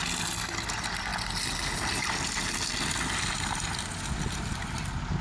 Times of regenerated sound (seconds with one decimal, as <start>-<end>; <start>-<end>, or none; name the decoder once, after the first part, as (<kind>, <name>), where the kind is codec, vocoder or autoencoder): none